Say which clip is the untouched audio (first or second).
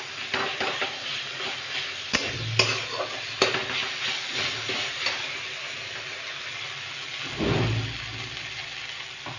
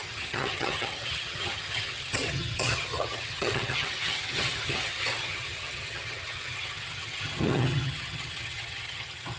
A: first